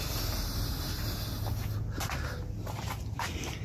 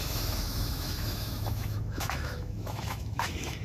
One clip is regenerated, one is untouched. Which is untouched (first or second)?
first